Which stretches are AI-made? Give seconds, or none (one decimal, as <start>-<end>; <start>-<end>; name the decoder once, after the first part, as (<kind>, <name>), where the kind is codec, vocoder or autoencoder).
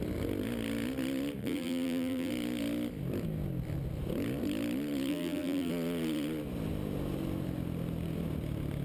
1.4-2.3 (vocoder, BigVGAN v2); 5.1-5.7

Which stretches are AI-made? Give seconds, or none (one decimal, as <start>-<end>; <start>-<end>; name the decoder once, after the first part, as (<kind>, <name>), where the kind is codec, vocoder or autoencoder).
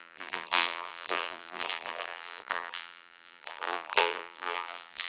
0.0-5.1 (vocoder, BigVGAN v2)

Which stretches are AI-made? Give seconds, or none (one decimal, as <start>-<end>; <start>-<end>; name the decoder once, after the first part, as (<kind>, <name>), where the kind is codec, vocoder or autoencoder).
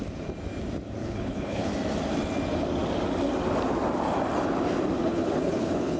1.0-1.7 (codec, HILCodec); 5.0-6.0